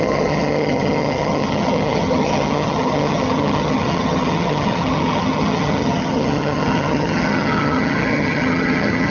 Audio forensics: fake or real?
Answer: fake